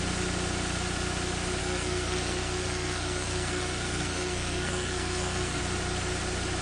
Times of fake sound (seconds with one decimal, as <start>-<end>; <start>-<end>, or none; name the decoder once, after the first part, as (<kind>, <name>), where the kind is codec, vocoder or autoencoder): 1.6-5.6 (codec, SNAC)